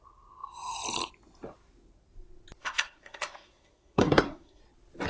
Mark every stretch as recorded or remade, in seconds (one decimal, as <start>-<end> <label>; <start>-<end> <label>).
0.0-2.6 recorded; 2.6-4.6 remade; 4.6-5.1 recorded